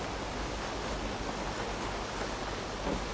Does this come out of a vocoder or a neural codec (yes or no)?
no